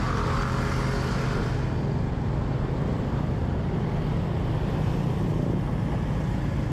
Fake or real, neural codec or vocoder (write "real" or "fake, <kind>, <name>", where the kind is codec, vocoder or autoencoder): real